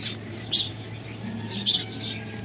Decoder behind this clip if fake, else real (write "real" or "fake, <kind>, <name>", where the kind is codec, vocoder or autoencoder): real